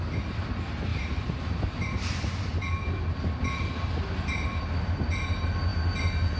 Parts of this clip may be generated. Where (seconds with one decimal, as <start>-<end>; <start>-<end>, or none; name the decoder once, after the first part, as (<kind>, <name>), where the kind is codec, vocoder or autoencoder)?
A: 0.9-2.6 (vocoder, BigVGAN v2)